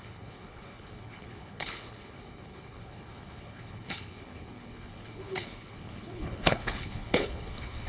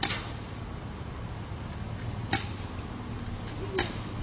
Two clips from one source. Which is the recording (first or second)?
second